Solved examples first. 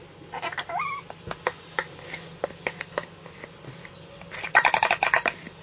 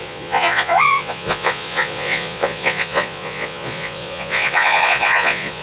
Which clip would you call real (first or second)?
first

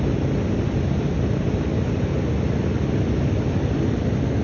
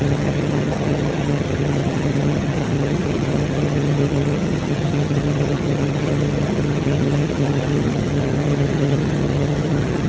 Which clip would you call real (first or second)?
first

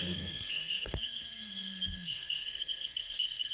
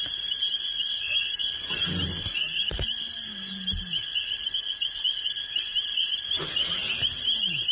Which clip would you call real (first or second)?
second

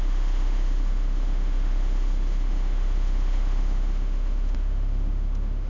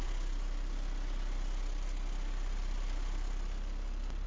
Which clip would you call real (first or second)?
second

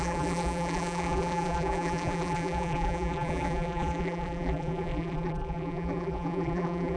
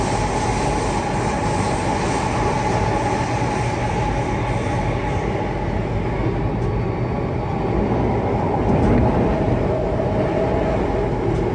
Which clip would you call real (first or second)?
second